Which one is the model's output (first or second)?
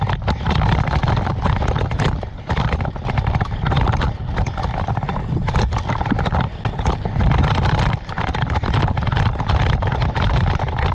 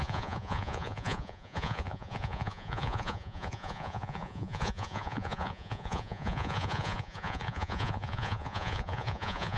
second